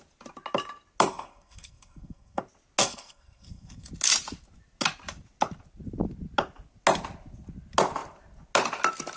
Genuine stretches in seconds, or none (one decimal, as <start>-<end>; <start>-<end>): 0.0-1.1; 2.4-2.8; 3.9-9.2